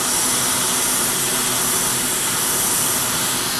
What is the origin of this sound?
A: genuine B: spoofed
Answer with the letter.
A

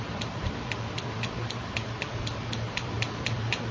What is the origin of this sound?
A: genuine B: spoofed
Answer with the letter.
B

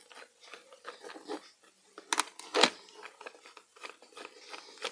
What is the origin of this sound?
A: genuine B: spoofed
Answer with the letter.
A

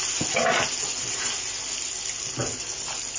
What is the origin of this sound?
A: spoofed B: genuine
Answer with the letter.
B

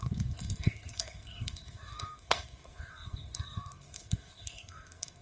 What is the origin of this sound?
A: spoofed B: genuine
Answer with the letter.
A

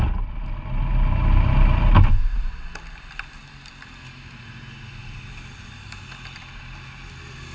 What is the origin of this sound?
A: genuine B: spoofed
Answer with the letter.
A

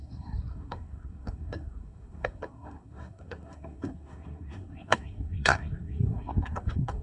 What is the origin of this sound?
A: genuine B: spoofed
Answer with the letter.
B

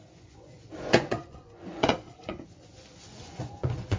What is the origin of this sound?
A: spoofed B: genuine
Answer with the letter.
A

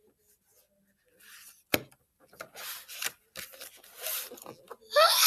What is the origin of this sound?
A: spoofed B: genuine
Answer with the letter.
B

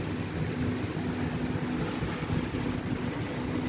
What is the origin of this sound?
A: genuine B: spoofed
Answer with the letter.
A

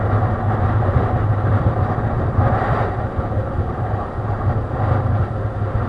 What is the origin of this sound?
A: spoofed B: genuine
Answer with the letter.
B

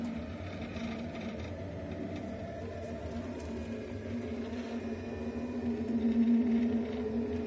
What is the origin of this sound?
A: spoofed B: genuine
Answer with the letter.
B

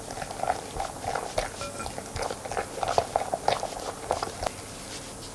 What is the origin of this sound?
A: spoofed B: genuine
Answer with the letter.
B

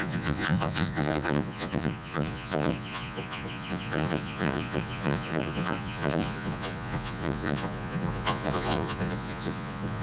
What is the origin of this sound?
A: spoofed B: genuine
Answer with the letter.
A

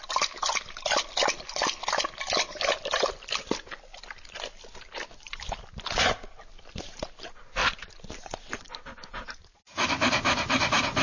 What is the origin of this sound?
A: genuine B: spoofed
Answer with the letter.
A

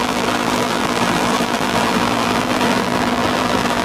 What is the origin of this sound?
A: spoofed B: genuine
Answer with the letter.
A